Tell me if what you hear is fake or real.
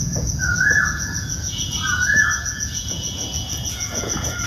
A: fake